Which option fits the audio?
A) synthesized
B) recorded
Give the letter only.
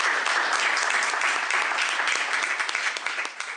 B